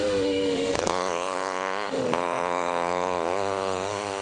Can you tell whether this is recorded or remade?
remade